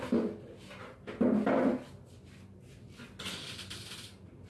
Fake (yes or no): no